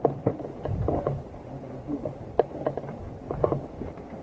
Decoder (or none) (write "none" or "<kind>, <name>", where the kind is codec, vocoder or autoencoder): none